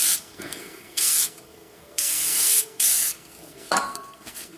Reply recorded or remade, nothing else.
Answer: remade